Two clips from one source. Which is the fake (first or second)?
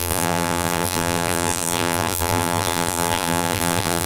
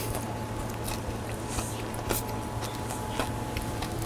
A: first